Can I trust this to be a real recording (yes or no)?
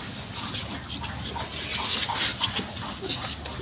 yes